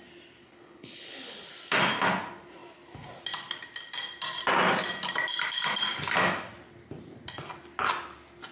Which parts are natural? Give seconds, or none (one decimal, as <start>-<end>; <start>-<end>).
0.0-0.4; 1.5-8.5